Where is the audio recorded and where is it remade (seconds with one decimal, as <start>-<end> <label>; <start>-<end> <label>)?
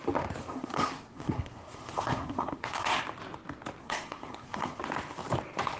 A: 0.0-0.4 recorded; 0.4-3.0 remade; 3.0-3.8 recorded; 3.8-4.8 remade; 4.8-5.8 recorded